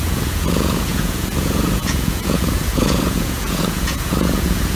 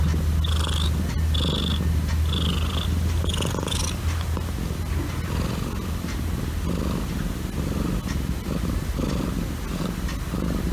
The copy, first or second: first